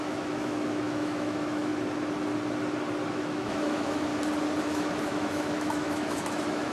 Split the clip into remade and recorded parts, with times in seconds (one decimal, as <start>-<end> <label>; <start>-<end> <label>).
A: 0.0-1.7 remade; 1.7-3.1 recorded; 3.1-4.1 remade; 4.1-4.6 recorded; 4.6-6.7 remade